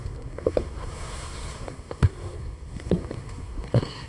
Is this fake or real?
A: fake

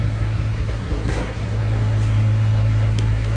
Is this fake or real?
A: fake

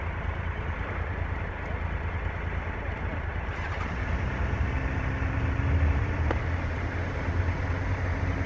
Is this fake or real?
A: real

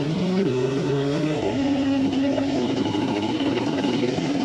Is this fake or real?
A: fake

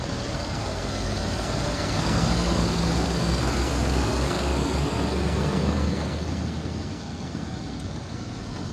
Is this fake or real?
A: fake